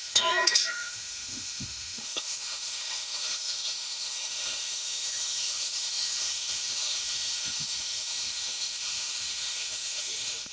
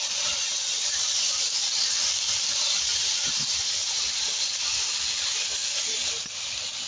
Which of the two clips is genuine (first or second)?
second